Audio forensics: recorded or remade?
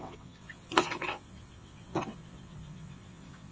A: remade